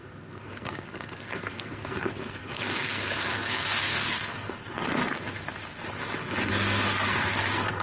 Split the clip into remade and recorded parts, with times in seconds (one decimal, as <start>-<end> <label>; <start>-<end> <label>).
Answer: 0.0-5.0 remade; 5.0-6.5 recorded; 6.5-7.8 remade